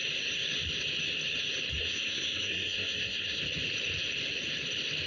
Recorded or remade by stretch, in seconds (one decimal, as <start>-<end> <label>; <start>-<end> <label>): 0.0-1.8 recorded; 1.8-3.4 remade; 3.4-5.1 recorded